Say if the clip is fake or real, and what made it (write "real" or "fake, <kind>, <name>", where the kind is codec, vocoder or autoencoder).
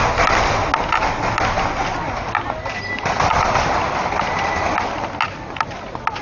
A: real